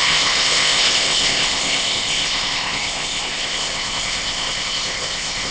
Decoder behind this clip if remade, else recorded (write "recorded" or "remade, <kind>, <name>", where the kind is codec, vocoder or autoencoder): remade, codec, ZipCodec